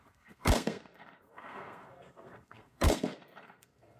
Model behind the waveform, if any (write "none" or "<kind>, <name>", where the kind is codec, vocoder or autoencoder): codec, SNAC